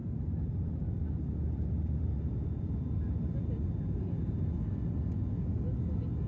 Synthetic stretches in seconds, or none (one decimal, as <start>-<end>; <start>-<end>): 0.0-3.8